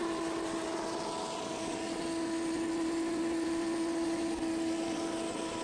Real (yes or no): yes